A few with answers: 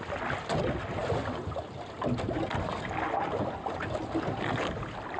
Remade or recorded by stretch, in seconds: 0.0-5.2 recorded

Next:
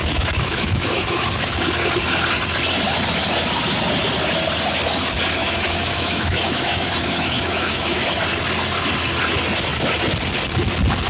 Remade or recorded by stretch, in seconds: 0.0-1.5 remade; 1.5-5.4 recorded; 5.4-8.2 remade; 8.2-11.1 recorded